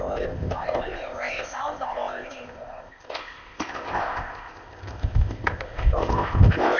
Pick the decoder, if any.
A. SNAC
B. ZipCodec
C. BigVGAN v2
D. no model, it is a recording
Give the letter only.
B